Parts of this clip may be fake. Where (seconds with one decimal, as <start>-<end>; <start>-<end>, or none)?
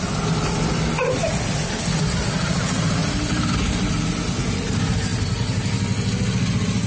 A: none